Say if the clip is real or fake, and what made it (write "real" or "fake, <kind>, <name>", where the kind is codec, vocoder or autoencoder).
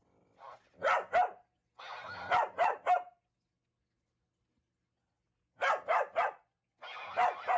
real